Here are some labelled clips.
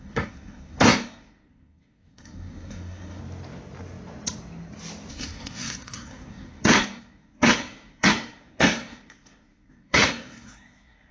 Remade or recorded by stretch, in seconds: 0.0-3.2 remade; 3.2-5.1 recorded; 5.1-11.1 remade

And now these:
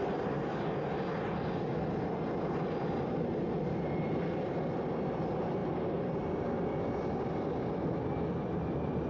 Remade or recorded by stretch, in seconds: 0.0-9.1 recorded

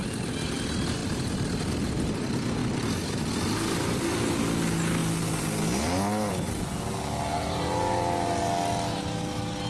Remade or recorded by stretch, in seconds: 0.0-9.7 recorded

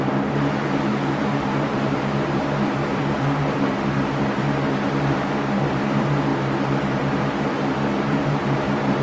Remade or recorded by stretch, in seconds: 0.0-9.0 remade

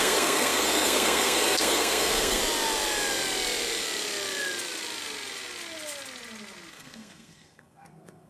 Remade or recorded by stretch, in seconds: 0.0-2.4 remade; 2.4-6.7 recorded; 6.7-8.3 remade

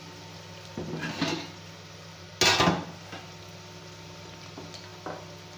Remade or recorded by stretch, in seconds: 0.0-5.6 recorded

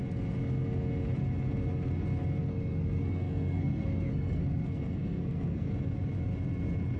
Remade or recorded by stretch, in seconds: 0.0-2.5 recorded; 2.5-5.7 remade; 5.7-7.0 recorded

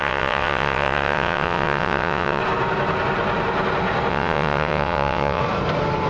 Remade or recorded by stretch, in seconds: 0.0-2.4 remade; 2.4-4.1 recorded; 4.1-5.4 remade; 5.4-6.1 recorded